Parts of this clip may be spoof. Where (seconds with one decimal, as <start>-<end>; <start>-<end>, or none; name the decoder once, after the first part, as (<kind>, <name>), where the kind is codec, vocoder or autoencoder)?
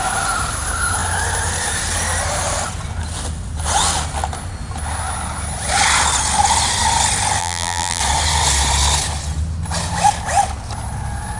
7.4-8.0 (vocoder, BigVGAN v2)